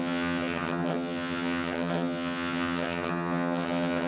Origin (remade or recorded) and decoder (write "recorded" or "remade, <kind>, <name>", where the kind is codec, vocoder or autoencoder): remade, vocoder, HiFi-GAN